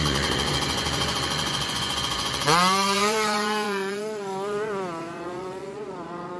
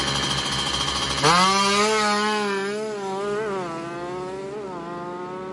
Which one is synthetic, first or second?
first